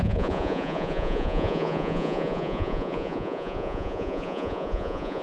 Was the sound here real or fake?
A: fake